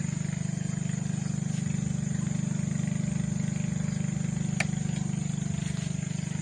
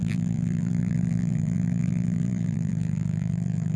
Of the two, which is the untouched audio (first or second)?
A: first